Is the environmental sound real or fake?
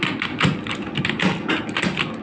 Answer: real